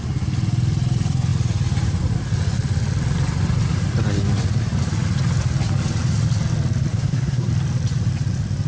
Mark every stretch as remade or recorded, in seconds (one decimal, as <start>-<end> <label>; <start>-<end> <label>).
0.0-6.9 recorded; 6.9-7.5 remade; 7.5-8.7 recorded